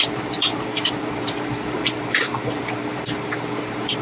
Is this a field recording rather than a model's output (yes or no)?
no